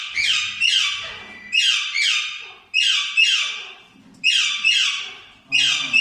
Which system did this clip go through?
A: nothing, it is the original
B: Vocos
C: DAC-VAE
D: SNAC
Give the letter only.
A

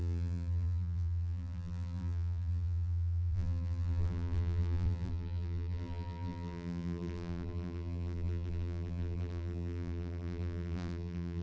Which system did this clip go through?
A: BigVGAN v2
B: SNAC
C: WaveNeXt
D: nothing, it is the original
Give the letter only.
A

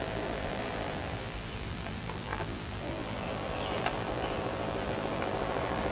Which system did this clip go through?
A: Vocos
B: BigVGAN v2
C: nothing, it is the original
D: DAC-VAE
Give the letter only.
B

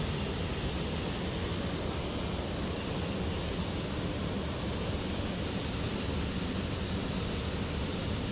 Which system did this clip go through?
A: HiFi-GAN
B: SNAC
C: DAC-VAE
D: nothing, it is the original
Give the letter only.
D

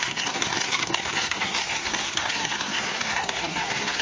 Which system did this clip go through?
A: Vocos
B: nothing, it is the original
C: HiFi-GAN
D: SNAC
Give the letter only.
D